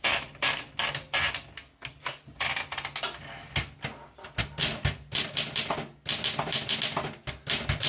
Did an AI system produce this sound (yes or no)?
no